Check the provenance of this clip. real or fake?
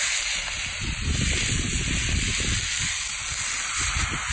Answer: real